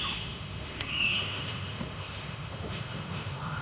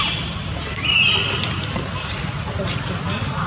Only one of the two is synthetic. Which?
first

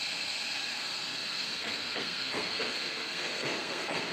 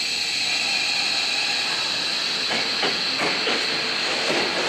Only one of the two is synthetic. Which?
first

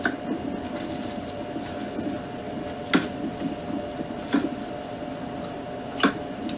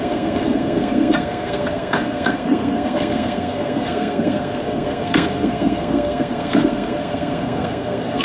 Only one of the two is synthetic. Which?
second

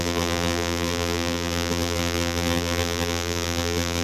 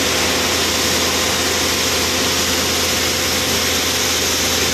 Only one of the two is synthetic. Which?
first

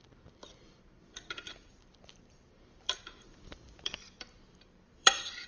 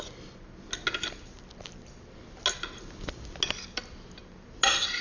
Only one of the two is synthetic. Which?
first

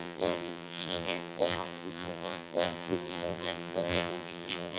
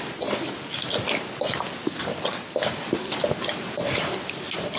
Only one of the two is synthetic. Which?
first